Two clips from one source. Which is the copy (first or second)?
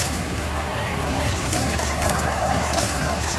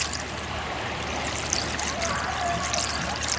first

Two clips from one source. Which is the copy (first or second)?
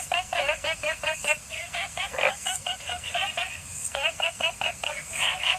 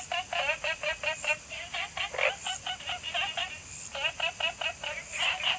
first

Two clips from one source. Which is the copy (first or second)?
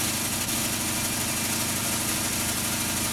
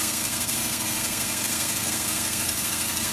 second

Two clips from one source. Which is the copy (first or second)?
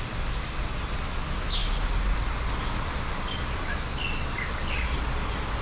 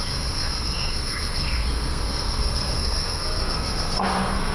second